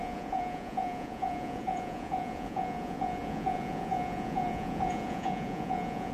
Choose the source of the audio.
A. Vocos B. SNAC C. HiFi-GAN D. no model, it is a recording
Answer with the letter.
A